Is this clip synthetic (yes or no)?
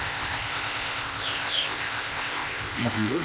yes